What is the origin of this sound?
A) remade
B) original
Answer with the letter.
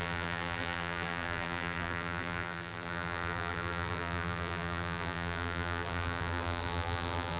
A